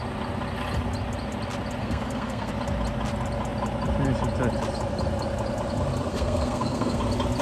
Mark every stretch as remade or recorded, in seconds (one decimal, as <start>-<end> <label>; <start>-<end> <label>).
0.0-1.8 recorded; 1.8-2.5 remade; 2.5-6.1 recorded; 6.1-7.0 remade; 7.0-7.4 recorded